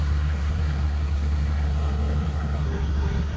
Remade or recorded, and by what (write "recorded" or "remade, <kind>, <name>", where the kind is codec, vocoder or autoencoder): remade, codec, SNAC